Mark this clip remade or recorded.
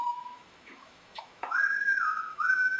remade